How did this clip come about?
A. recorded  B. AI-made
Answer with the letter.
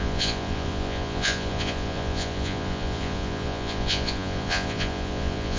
B